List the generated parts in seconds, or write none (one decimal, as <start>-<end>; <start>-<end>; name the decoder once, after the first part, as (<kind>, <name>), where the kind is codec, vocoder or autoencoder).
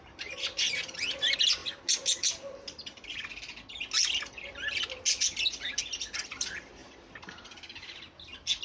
none